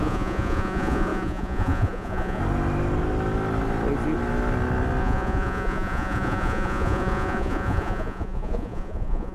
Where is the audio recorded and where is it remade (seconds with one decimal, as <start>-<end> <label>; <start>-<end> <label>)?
0.0-2.4 remade; 2.4-5.0 recorded; 5.0-9.3 remade